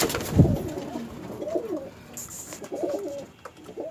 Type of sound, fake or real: real